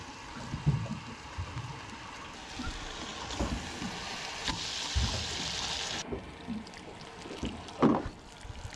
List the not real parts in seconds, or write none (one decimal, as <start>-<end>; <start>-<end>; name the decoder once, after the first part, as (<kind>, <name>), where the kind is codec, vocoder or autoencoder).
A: none